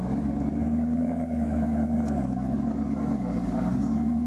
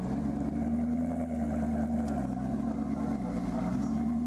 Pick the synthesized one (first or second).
first